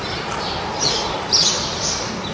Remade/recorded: recorded